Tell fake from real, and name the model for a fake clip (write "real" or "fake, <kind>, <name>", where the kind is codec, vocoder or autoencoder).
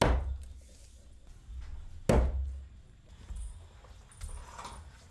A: real